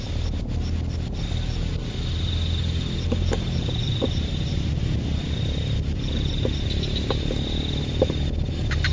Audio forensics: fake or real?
real